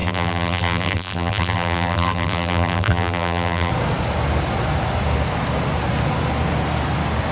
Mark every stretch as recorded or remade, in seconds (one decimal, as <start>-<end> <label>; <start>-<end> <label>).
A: 0.0-3.7 remade; 3.7-7.3 recorded